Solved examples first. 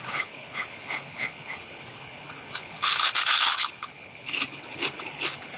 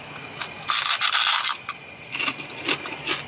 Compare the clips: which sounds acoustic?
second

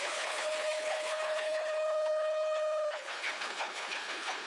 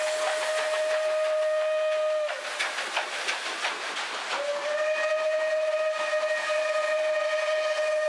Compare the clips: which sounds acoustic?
second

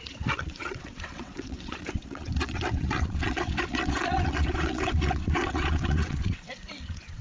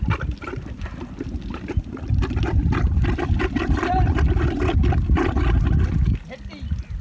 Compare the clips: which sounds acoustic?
second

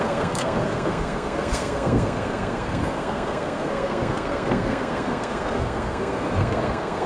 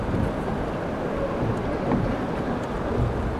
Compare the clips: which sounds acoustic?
second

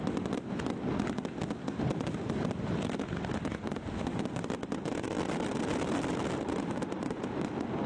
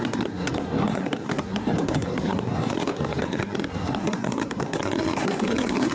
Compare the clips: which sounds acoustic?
first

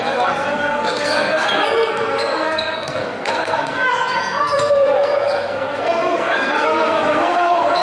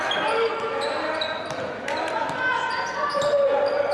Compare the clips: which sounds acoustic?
second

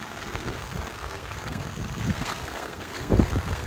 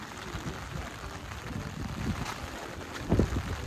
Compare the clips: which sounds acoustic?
second